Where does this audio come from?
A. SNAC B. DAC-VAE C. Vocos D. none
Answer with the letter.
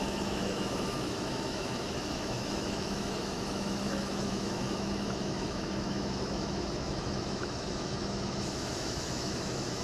B